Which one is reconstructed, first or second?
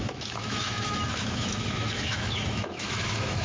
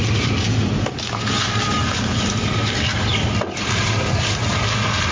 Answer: first